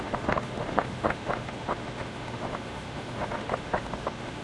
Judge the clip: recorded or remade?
remade